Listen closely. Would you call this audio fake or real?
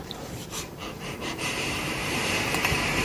fake